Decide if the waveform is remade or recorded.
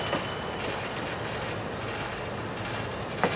recorded